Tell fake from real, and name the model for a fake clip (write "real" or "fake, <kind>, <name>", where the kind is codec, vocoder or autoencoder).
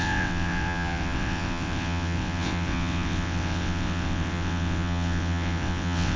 fake, vocoder, WaveNeXt